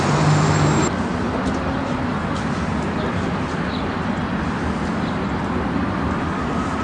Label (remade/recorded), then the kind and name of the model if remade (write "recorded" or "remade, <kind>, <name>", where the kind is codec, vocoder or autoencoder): recorded